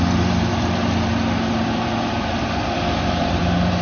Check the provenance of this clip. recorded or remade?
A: remade